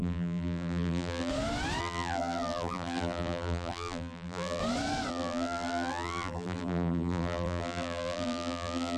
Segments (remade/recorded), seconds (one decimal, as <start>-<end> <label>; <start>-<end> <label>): 0.0-1.3 remade; 1.3-1.8 recorded; 1.8-4.6 remade; 4.6-5.1 recorded; 5.1-9.0 remade